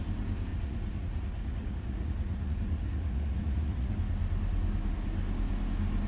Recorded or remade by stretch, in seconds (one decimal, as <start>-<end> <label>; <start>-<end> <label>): 0.0-0.5 recorded; 0.5-3.9 remade; 3.9-6.1 recorded